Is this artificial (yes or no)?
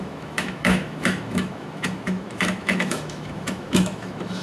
yes